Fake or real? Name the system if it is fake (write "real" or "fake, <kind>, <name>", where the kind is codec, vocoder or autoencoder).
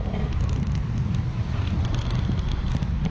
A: real